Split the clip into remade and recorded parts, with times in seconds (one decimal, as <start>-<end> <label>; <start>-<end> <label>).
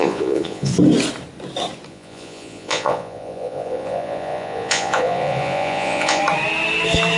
0.0-0.7 remade; 0.7-1.9 recorded; 1.9-6.2 remade; 6.2-7.2 recorded